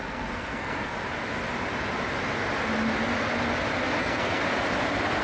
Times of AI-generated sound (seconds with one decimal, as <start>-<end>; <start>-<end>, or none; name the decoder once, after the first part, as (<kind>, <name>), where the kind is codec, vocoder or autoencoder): 0.0-0.9 (codec, SNAC); 4.0-4.4